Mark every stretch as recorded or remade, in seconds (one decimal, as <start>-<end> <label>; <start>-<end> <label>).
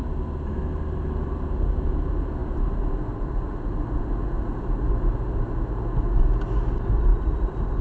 0.0-7.1 recorded; 7.1-7.8 remade